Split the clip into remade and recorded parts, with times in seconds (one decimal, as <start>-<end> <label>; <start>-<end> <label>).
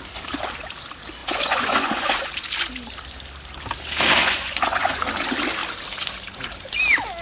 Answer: 0.0-1.2 recorded; 1.2-2.3 remade; 2.3-4.2 recorded; 4.2-5.0 remade; 5.0-7.2 recorded